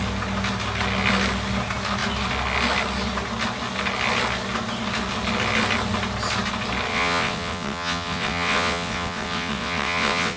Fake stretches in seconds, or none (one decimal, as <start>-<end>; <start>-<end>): 6.9-10.4